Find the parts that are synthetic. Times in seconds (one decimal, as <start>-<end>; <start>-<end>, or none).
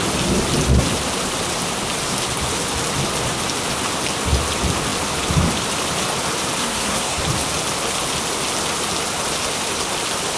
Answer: 6.6-7.2